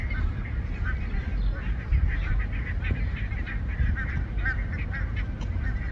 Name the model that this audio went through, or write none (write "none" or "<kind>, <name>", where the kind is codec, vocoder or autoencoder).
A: none